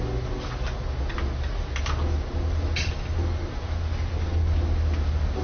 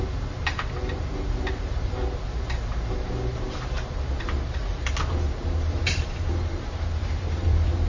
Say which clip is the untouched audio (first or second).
first